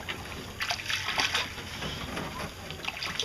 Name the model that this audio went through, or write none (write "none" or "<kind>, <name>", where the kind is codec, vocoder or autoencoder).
none